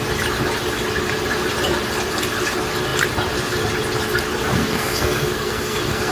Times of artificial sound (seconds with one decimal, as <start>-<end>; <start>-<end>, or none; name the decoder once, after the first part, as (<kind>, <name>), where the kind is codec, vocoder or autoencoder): 4.4-6.1 (codec, SNAC)